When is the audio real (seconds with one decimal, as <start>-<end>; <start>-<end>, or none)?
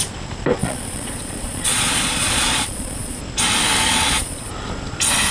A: 0.0-0.6; 3.2-3.9; 4.5-5.3